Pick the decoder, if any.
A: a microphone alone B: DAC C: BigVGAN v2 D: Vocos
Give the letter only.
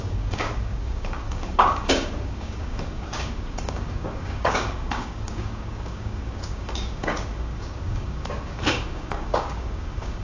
B